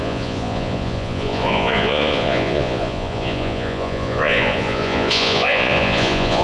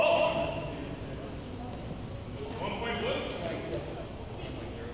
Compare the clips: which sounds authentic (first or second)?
second